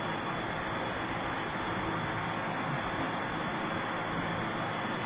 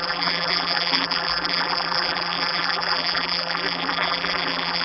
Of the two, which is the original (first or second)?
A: first